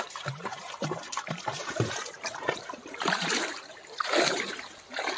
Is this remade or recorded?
remade